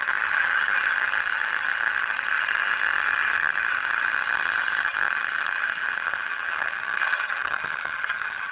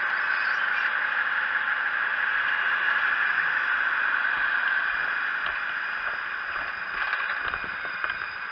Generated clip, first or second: first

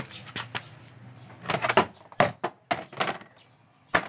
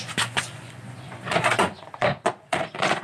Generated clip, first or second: second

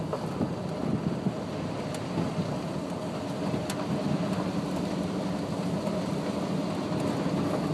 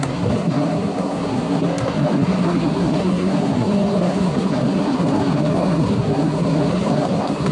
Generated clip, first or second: second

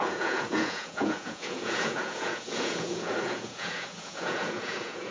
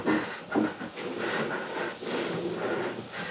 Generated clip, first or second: first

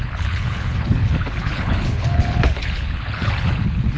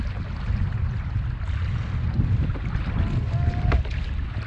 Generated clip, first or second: first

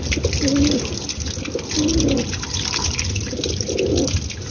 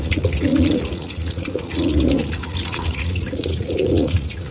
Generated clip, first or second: second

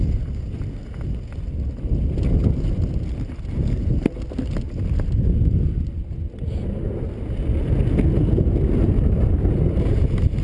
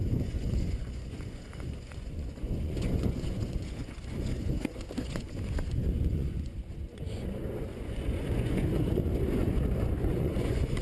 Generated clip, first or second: second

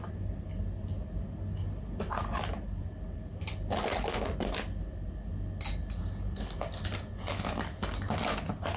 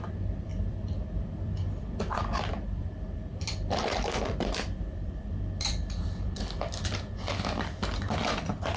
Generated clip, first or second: second